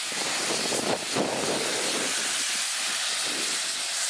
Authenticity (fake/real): real